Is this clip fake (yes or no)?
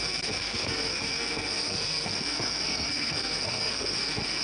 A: yes